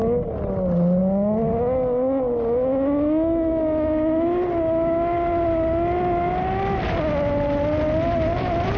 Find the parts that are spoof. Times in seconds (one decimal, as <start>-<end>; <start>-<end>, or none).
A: none